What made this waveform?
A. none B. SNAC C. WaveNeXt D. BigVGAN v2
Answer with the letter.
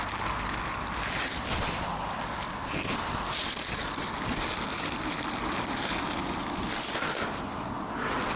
A